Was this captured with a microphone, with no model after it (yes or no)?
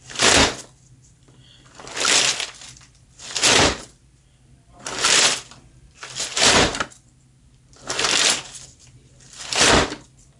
no